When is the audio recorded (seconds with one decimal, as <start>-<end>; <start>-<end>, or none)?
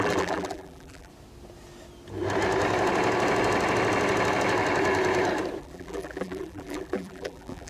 1.1-5.6